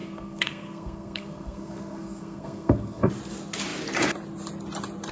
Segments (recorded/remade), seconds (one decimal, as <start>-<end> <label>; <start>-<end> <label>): 0.0-3.1 remade; 3.1-5.1 recorded